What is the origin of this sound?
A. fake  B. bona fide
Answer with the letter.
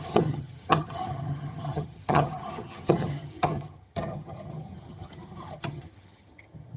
A